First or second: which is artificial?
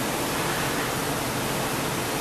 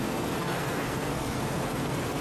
second